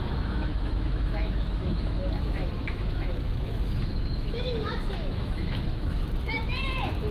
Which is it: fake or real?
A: fake